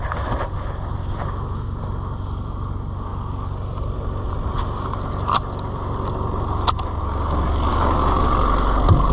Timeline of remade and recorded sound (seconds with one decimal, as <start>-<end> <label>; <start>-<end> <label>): 0.0-7.7 recorded; 7.7-8.2 remade; 8.2-9.1 recorded